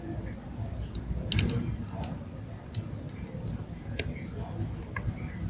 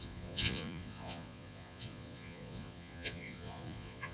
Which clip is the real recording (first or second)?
first